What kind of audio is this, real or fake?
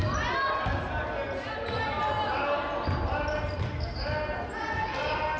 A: real